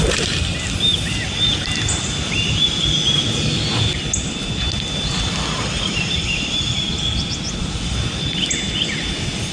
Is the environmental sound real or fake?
real